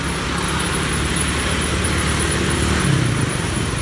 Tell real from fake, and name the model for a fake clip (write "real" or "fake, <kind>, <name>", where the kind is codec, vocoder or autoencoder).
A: real